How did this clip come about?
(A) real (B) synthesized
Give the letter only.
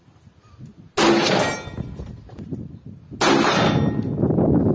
A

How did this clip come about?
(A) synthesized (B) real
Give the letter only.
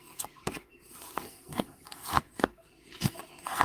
A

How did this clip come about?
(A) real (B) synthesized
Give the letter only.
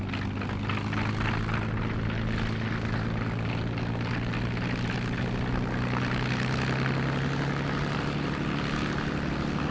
A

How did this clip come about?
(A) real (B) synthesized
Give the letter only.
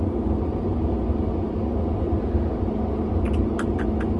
A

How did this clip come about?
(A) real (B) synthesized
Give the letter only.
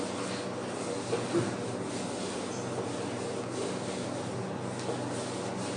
A